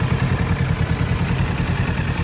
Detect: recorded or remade recorded